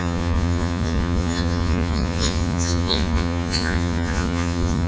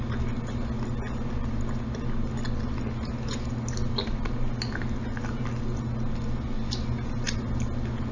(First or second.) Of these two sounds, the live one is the second